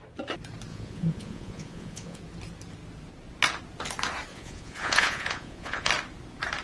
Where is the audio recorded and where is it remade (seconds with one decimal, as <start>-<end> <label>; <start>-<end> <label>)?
0.0-0.7 recorded; 0.7-2.2 remade; 2.2-4.3 recorded; 4.3-5.9 remade; 5.9-6.6 recorded